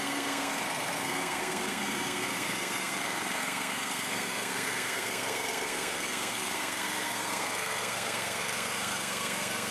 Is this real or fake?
fake